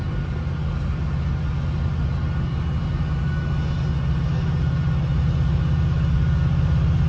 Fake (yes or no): no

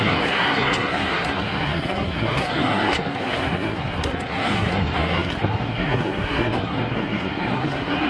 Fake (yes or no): yes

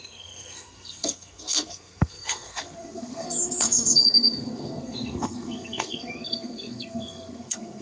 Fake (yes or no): yes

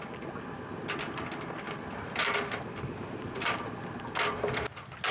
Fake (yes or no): no